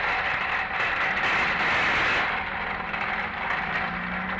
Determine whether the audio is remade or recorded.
recorded